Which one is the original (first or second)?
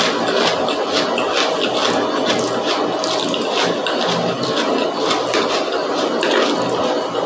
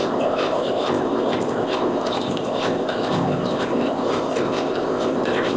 first